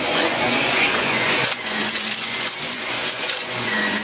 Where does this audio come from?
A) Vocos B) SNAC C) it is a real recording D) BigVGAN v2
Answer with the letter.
A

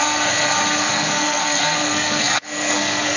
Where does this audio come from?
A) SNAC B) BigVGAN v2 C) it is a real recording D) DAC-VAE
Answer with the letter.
A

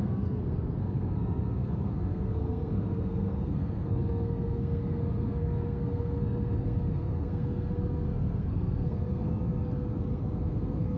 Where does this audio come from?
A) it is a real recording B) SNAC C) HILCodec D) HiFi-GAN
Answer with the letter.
B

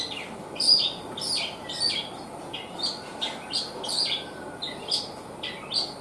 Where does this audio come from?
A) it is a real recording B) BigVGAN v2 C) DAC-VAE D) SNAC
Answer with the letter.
A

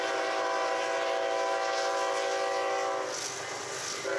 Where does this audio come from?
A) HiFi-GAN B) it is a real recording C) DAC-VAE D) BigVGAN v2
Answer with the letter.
B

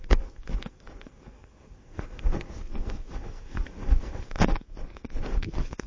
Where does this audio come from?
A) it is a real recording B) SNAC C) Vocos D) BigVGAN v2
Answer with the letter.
B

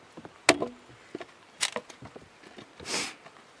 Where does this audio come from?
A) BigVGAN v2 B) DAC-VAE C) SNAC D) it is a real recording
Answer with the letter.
D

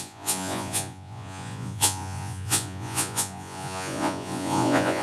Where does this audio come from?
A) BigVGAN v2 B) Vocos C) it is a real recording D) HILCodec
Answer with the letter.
B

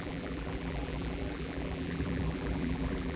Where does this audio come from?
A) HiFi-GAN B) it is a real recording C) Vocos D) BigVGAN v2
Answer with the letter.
D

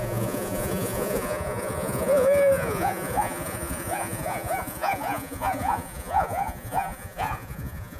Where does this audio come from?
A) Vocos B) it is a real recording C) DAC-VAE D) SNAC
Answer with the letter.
A